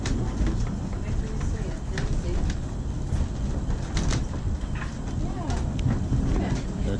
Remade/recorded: recorded